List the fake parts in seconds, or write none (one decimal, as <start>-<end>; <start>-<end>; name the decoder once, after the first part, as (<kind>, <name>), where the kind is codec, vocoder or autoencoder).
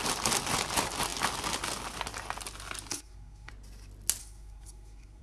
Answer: 2.9-3.5 (codec, SNAC); 4.2-5.2